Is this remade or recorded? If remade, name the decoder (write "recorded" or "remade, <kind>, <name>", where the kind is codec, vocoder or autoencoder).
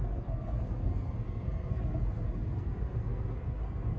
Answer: remade, codec, SNAC